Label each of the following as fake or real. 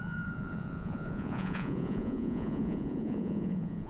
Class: fake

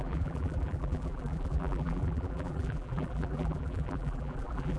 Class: fake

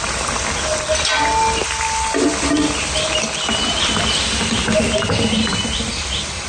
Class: real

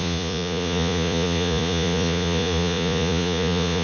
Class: fake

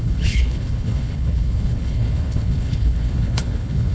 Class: fake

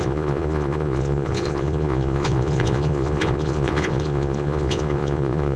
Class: fake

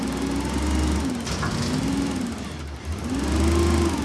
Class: real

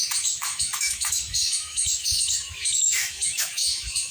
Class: fake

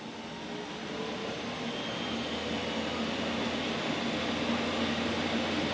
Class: real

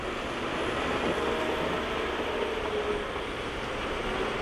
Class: real